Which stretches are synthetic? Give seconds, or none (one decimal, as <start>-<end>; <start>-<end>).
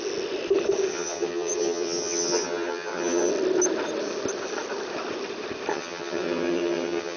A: 0.9-3.3; 5.7-7.2